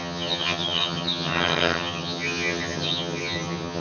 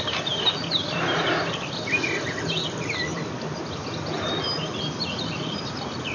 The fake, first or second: first